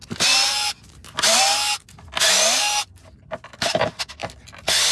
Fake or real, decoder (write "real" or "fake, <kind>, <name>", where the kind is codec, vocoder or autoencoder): real